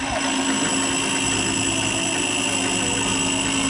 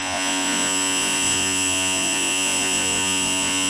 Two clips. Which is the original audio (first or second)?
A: first